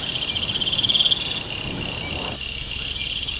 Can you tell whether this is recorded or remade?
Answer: recorded